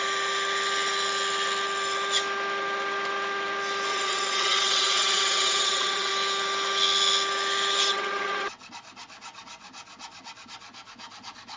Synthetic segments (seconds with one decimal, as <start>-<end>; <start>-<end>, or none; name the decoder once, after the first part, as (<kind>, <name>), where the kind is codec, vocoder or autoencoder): 3.9-6.1 (vocoder, WaveNeXt); 7.9-8.7